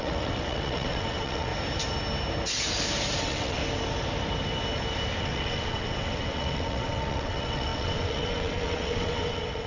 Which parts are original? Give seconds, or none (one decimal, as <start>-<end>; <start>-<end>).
1.5-3.2; 3.6-5.2